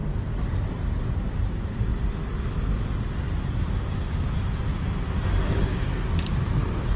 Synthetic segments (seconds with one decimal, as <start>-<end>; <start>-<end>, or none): 0.0-1.9; 6.1-7.0